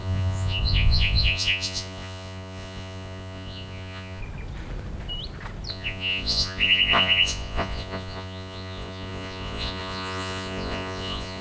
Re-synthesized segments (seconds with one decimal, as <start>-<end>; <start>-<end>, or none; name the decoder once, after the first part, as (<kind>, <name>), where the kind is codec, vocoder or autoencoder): 0.0-4.2 (vocoder, Vocos); 5.7-11.4